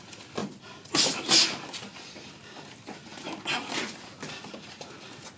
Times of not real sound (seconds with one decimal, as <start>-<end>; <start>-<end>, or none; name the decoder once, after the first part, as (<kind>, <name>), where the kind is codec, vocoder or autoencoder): none